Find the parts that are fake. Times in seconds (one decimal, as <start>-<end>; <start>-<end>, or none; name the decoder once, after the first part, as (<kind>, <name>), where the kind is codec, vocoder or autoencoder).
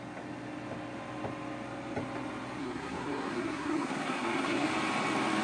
2.6-4.7 (codec, SNAC)